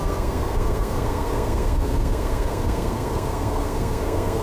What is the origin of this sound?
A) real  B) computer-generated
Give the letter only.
B